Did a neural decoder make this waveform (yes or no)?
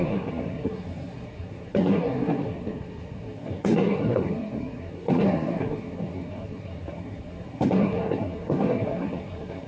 yes